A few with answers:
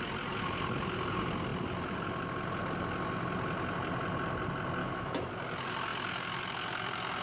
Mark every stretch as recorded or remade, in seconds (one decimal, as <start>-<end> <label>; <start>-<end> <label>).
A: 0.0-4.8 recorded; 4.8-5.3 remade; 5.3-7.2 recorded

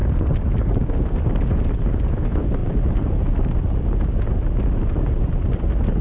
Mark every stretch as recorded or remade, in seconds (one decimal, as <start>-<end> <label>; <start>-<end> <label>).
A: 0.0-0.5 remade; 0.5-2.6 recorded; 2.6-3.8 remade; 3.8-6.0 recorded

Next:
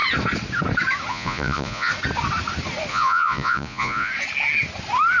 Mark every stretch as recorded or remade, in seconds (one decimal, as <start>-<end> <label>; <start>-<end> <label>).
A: 0.0-1.1 recorded; 1.1-1.9 remade; 1.9-2.9 recorded; 2.9-4.1 remade; 4.1-5.2 recorded

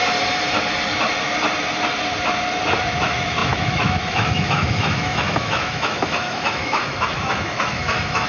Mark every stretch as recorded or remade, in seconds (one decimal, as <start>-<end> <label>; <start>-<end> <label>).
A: 0.0-3.0 recorded; 3.0-8.3 remade

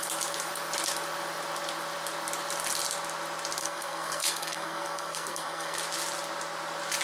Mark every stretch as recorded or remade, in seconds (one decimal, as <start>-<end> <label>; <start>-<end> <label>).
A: 0.0-3.6 recorded; 3.6-5.8 remade; 5.8-7.0 recorded

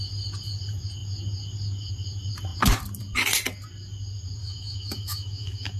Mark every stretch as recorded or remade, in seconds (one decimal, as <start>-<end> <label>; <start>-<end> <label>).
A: 0.0-4.4 recorded; 4.4-5.8 remade